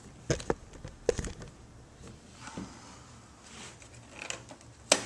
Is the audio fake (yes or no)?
no